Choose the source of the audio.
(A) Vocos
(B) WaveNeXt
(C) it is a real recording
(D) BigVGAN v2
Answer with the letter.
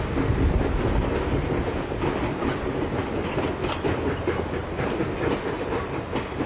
C